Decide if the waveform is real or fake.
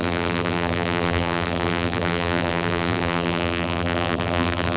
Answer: fake